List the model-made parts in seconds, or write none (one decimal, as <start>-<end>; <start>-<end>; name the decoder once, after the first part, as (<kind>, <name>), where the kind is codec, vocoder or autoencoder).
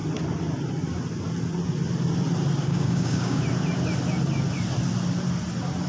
2.6-3.4 (codec, DAC)